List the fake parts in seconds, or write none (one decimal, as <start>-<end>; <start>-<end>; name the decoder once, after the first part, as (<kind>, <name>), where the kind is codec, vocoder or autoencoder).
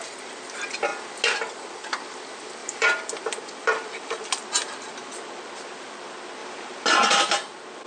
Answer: 2.6-4.4 (vocoder, BigVGAN v2); 6.4-7.1